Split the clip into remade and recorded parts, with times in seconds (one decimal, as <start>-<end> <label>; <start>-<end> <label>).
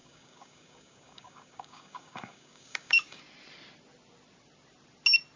0.0-3.2 remade; 3.2-5.4 recorded